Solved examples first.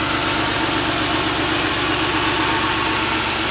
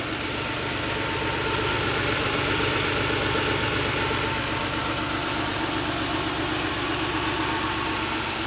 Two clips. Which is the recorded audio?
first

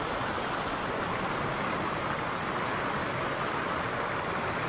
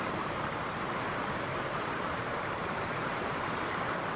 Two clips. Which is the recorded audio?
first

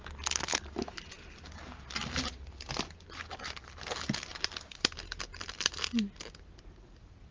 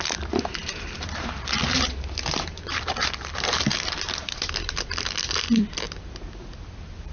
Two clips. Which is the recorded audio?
first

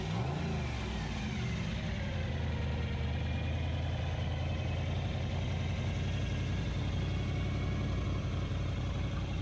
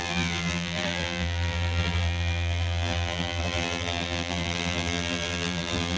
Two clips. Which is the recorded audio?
first